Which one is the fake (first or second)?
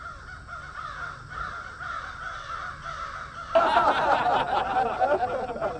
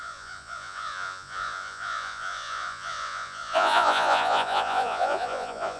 second